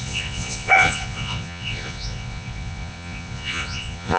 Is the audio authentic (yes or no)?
no